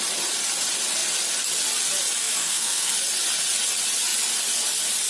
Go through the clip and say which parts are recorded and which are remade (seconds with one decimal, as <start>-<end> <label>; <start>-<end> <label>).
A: 0.0-2.2 recorded; 2.2-2.9 remade; 2.9-5.1 recorded